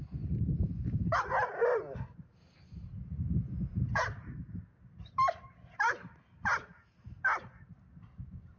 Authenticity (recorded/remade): recorded